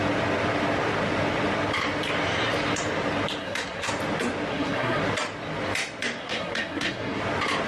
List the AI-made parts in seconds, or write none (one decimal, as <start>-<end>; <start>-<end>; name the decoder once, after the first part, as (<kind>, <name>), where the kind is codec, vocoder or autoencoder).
3.4-3.9 (codec, SNAC); 4.5-5.0; 6.2-7.2